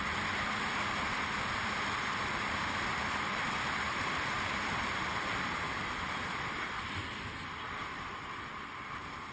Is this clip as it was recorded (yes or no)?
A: no